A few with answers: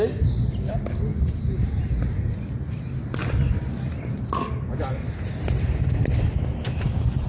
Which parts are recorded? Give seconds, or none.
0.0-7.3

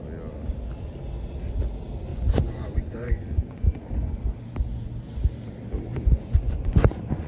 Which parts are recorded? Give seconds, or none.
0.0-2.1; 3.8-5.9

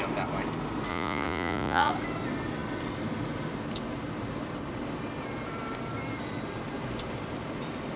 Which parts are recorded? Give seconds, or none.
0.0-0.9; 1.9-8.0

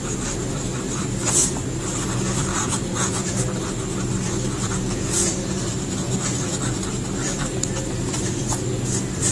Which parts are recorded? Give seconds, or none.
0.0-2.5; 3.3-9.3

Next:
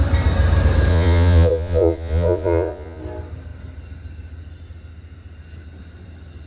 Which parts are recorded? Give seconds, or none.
0.0-0.9; 3.0-6.5

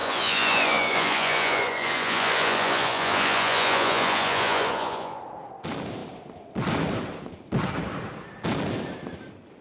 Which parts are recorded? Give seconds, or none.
5.2-9.6

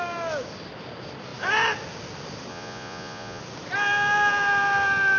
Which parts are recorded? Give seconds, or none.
0.0-2.5; 3.4-5.2

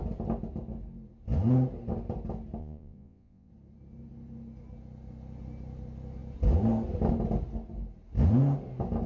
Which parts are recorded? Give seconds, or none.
0.0-2.6; 3.5-9.1